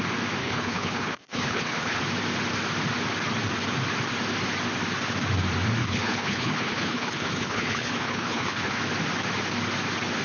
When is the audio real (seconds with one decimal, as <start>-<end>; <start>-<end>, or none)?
0.0-0.4; 2.0-5.8; 8.8-10.2